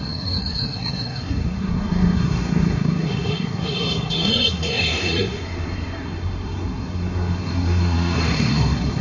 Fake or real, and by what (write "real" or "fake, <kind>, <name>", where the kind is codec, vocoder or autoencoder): fake, codec, SNAC